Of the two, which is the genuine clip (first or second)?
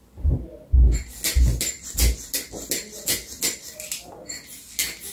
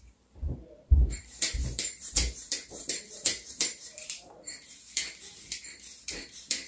first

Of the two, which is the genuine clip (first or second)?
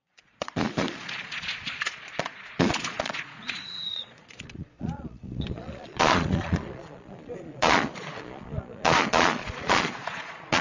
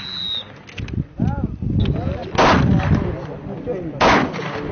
second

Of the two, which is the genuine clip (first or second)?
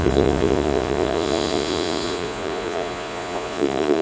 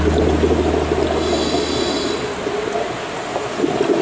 second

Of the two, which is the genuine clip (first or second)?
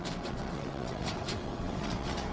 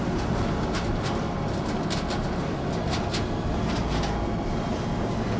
second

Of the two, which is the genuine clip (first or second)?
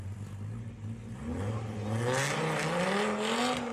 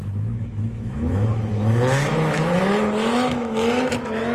first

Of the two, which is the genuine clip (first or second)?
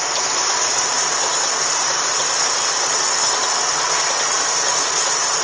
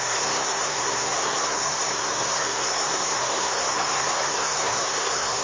first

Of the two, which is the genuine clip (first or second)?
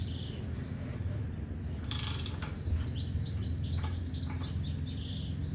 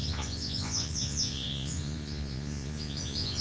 first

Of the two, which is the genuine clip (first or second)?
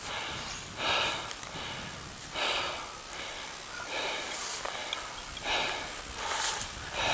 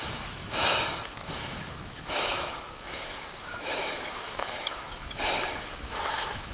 first